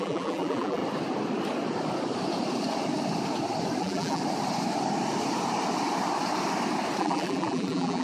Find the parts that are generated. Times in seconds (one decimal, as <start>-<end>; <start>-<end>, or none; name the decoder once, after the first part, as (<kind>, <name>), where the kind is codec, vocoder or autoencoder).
0.0-0.8 (vocoder, BigVGAN v2); 3.8-4.2; 7.0-8.0